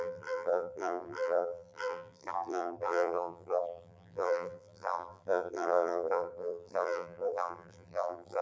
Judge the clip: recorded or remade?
remade